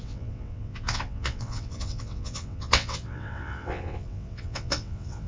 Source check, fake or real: fake